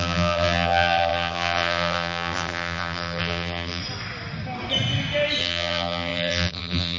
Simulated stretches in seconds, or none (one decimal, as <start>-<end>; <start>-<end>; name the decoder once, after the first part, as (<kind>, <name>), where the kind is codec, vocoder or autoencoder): 0.0-3.8 (vocoder, BigVGAN v2); 5.4-7.0